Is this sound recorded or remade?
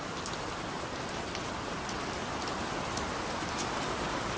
recorded